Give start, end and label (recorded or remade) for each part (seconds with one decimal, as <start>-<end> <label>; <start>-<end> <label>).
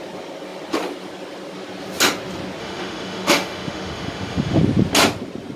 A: 0.0-2.6 recorded; 2.6-4.6 remade; 4.6-5.6 recorded